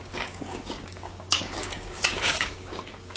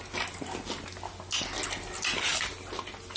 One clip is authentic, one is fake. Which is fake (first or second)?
first